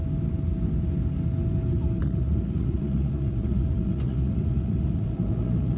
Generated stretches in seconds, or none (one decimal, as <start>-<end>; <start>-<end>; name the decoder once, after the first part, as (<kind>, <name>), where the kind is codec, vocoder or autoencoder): 2.0-5.8 (vocoder, Vocos)